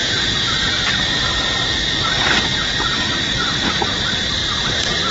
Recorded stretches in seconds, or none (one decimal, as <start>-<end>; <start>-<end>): 0.8-5.1